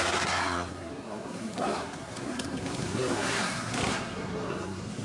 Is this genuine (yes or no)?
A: no